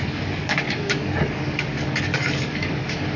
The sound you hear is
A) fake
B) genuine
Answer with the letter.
A